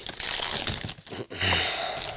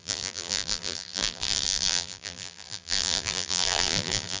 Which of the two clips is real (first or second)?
first